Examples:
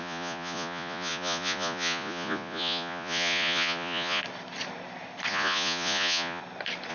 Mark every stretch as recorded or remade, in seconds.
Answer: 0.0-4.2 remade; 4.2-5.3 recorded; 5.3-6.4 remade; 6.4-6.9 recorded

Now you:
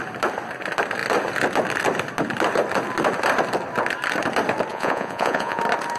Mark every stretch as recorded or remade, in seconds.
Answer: 0.0-4.7 recorded; 4.7-5.6 remade; 5.6-6.0 recorded

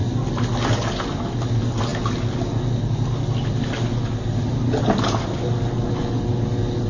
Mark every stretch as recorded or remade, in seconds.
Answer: 0.0-6.9 recorded

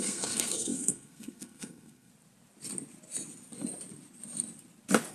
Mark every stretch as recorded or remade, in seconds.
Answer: 0.0-2.1 remade; 2.1-5.1 recorded

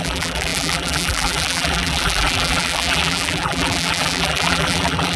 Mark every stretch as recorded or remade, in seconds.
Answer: 0.0-5.2 remade

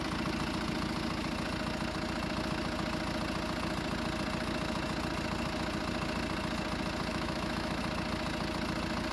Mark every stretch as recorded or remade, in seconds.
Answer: 0.0-7.1 recorded; 7.1-7.8 remade; 7.8-9.1 recorded

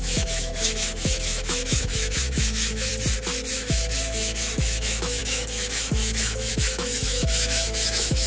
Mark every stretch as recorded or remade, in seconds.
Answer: 0.0-2.9 remade; 2.9-3.5 recorded; 3.5-8.3 remade

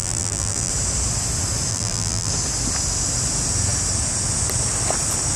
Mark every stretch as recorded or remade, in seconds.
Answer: 0.0-0.7 remade; 0.7-1.7 recorded; 1.7-2.3 remade; 2.3-5.4 recorded